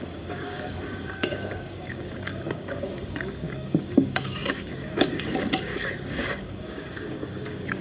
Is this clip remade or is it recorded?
remade